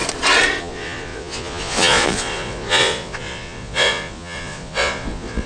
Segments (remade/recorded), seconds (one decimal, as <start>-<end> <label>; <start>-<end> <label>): 0.0-0.6 recorded; 0.6-5.5 remade